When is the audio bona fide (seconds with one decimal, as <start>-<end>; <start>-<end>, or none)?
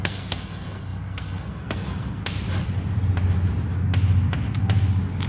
2.2-5.3